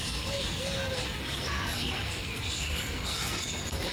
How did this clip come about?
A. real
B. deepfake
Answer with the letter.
B